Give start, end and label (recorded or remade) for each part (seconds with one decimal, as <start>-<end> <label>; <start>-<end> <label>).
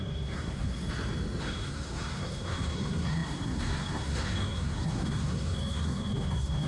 0.0-0.8 remade; 0.8-1.4 recorded; 1.4-6.7 remade